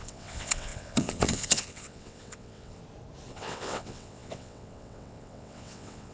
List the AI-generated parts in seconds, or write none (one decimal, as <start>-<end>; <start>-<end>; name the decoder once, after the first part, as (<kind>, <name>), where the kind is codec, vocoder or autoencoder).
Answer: 0.0-2.8 (vocoder, WaveNeXt); 3.3-6.1